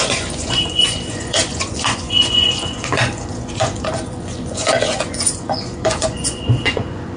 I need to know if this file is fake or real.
fake